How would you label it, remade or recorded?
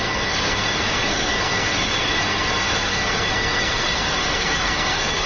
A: remade